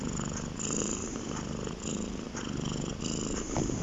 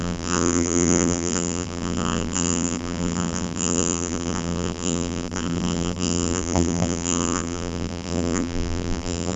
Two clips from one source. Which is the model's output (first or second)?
second